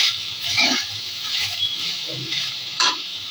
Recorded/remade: remade